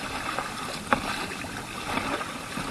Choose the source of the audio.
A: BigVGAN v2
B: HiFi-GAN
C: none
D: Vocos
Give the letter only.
C